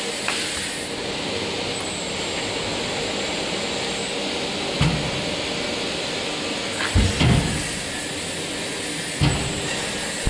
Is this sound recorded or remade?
recorded